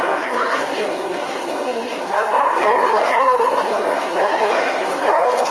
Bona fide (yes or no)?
no